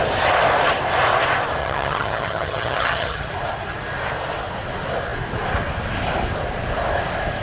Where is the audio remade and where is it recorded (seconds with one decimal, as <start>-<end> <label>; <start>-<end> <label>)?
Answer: 0.0-1.6 recorded; 1.6-3.3 remade; 3.3-7.4 recorded